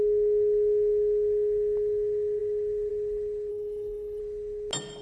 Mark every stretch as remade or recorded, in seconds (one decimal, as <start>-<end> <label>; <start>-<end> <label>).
0.0-3.5 recorded; 3.5-4.2 remade; 4.2-5.0 recorded